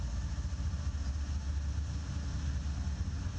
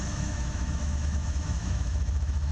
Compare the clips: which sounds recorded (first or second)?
first